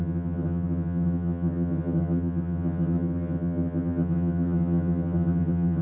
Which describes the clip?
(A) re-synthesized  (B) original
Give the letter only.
A